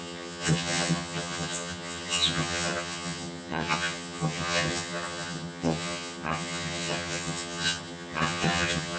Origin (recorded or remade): remade